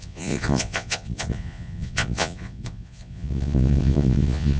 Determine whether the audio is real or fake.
fake